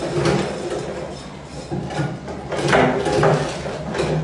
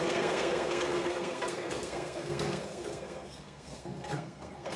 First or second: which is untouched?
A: first